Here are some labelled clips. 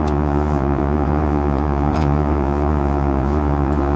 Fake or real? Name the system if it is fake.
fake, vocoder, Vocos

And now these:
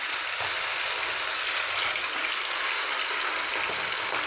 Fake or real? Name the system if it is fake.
real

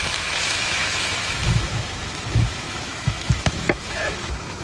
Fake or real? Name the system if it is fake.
fake, autoencoder, DAC-VAE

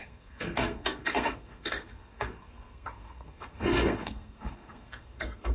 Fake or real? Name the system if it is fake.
fake, codec, SNAC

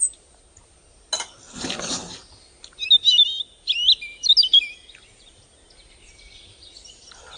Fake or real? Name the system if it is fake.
real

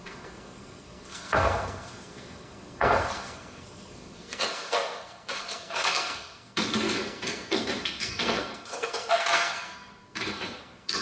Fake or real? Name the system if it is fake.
fake, codec, SNAC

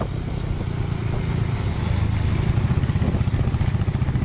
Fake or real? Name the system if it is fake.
real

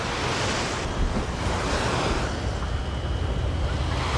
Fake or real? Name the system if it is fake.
real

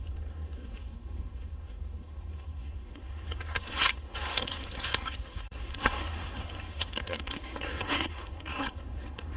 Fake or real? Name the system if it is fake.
fake, codec, SNAC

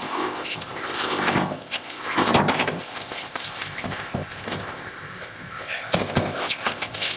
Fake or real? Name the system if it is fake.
fake, codec, ZipCodec